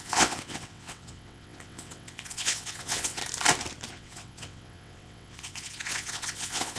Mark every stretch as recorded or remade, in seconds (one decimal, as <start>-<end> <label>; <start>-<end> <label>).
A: 0.0-3.2 remade; 3.2-3.9 recorded; 3.9-6.8 remade